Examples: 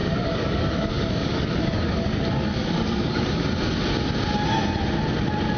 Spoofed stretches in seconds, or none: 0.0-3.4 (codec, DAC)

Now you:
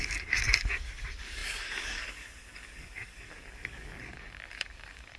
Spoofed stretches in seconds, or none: 0.0-5.2 (codec, DAC)

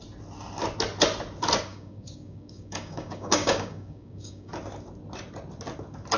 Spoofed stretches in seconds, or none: 1.7-4.5 (codec, DAC)

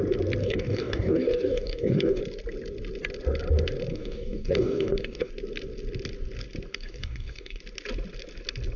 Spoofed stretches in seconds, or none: 0.4-2.2 (codec, DAC); 3.9-5.3; 6.7-7.6

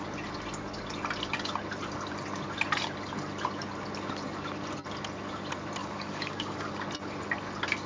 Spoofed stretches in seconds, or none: 5.8-6.7 (codec, DAC)

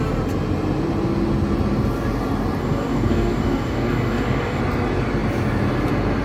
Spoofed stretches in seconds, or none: 2.6-4.6 (codec, DAC)

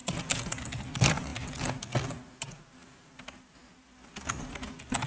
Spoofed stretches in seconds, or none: none

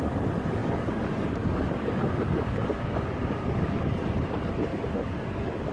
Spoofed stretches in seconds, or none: 0.6-4.0 (codec, DAC); 4.7-5.7